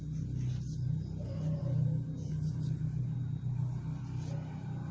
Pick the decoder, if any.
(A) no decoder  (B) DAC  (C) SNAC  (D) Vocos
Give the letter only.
A